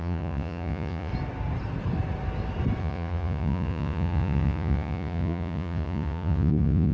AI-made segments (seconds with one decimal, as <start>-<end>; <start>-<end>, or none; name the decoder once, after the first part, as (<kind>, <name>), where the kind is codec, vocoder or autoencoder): 0.0-1.1 (vocoder, Vocos); 2.8-6.9